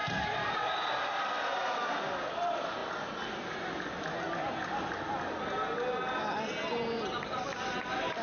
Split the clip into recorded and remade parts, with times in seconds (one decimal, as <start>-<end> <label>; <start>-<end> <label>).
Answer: 0.0-0.6 remade; 0.6-8.2 recorded